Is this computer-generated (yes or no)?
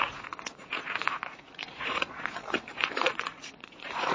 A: yes